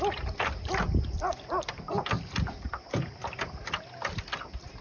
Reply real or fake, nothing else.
real